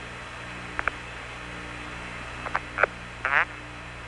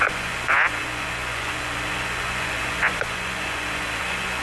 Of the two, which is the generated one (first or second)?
second